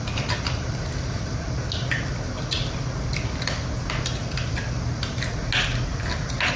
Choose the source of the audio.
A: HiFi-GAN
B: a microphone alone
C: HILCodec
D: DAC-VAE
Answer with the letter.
B